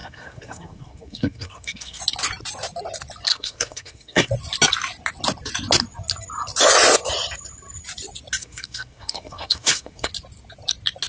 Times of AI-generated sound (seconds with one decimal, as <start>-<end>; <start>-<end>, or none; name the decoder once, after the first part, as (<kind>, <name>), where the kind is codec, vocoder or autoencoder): 0.0-2.0 (codec, SNAC); 3.3-4.3; 8.4-10.1